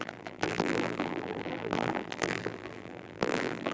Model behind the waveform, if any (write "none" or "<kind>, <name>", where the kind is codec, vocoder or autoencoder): vocoder, BigVGAN v2